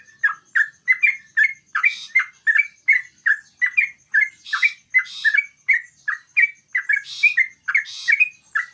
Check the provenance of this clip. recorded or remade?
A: recorded